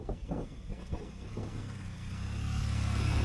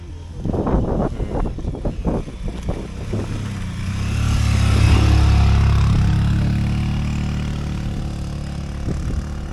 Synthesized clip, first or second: first